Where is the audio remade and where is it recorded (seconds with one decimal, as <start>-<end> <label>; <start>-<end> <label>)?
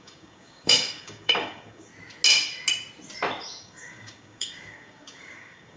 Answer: 0.0-1.9 remade; 1.9-3.6 recorded; 3.6-5.8 remade